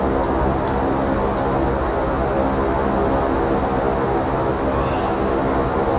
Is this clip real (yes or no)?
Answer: yes